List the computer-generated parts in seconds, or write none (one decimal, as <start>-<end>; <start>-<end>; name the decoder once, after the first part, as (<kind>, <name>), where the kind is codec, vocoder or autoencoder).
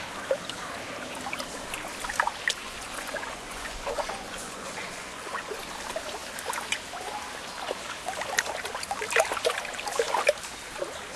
2.6-5.6 (vocoder, Vocos)